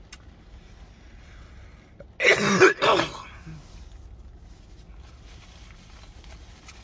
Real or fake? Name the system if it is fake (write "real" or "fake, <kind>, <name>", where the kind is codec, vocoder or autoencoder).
real